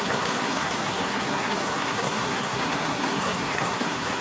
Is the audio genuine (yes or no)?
no